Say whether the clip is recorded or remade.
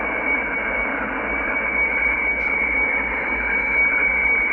recorded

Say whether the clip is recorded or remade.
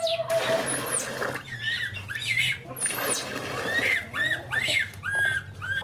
recorded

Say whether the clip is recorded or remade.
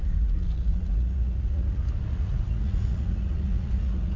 remade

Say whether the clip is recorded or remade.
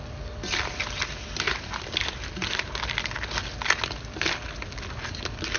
recorded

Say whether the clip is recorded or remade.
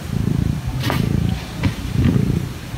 recorded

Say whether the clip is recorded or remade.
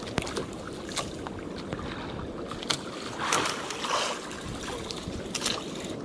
recorded